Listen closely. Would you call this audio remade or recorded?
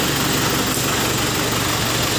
recorded